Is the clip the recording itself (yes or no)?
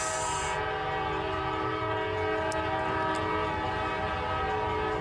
yes